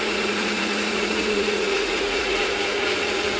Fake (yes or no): yes